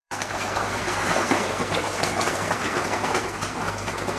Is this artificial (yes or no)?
yes